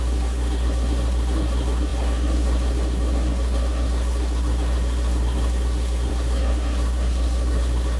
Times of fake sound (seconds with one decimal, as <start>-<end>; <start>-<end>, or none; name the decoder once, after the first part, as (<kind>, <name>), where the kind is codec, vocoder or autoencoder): 0.0-8.0 (codec, SNAC)